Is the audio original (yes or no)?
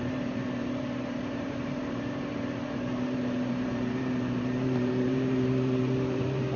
no